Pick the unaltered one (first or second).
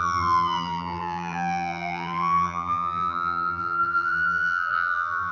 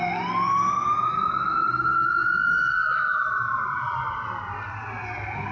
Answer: second